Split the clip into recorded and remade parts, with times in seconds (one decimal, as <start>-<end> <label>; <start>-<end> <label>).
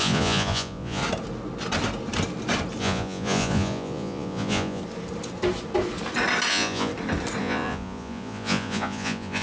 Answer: 0.0-1.0 remade; 1.0-2.8 recorded; 2.8-4.8 remade; 4.8-6.5 recorded; 6.5-6.9 remade; 6.9-7.4 recorded; 7.4-9.4 remade